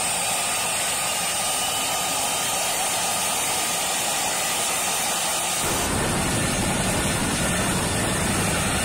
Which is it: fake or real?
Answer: real